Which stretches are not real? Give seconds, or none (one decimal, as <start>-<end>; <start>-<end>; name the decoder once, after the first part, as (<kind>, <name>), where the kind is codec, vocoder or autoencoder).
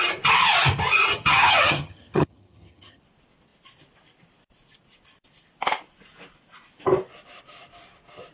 1.1-3.0 (vocoder, HiFi-GAN)